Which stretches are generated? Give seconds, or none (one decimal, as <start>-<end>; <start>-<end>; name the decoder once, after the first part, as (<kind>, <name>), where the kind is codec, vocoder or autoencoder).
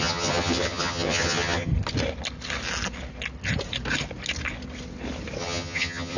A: 0.0-1.7 (vocoder, HiFi-GAN); 5.4-6.2